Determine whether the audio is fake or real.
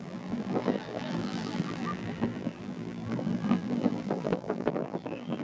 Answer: fake